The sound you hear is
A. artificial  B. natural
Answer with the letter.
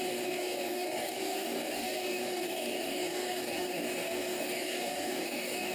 A